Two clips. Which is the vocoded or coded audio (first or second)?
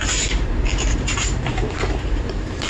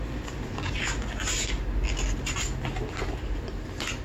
first